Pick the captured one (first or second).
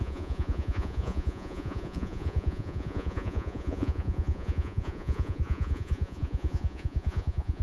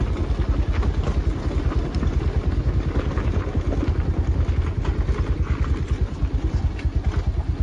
second